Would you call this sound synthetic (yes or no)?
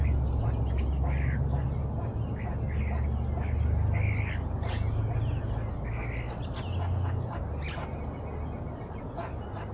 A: no